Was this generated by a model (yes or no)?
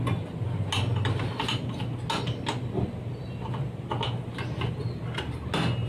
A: no